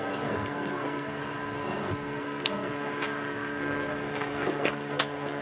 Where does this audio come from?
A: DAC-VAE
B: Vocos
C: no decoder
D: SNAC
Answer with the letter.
D